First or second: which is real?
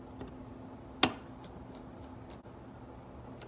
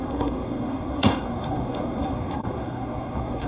first